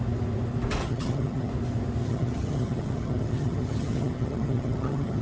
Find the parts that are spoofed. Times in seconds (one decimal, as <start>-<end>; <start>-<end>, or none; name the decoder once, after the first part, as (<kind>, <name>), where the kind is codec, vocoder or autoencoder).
0.8-1.5 (vocoder, HiFi-GAN); 2.0-5.2